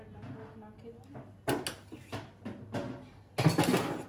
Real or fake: real